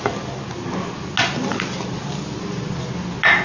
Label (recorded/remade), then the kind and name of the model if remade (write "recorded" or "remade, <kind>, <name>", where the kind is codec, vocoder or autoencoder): recorded